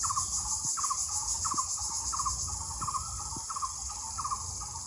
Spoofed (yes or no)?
no